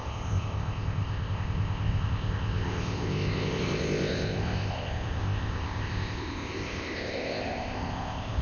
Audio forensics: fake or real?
fake